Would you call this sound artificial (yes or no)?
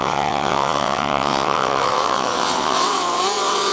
yes